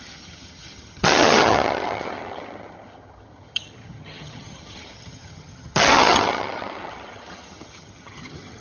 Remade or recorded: remade